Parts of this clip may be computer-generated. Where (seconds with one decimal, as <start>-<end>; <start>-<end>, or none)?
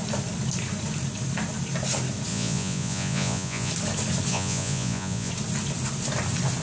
2.3-3.7; 4.3-5.3